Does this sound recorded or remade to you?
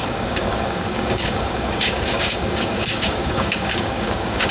remade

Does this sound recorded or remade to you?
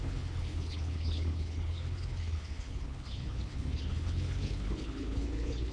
remade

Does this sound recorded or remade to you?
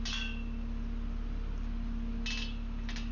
recorded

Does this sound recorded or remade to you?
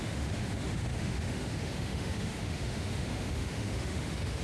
remade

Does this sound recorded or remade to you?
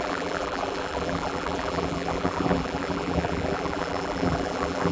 remade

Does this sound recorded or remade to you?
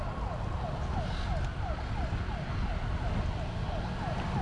recorded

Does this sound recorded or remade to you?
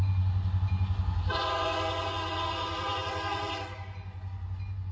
remade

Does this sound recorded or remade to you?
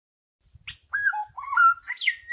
recorded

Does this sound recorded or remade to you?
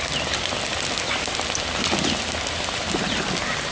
recorded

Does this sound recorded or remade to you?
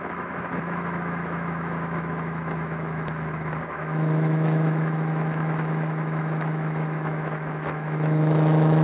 remade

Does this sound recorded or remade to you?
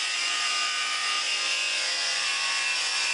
remade